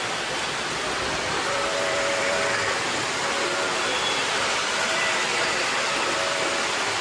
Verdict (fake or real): fake